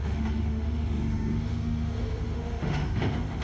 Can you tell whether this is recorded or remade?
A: remade